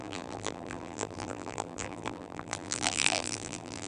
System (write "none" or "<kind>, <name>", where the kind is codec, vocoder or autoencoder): vocoder, BigVGAN v2